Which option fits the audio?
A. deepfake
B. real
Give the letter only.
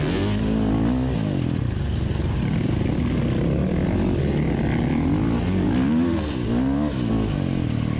B